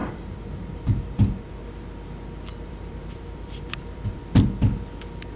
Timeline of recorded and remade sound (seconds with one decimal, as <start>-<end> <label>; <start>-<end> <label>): 0.0-1.5 remade; 1.5-2.5 recorded; 2.5-4.2 remade; 4.2-5.4 recorded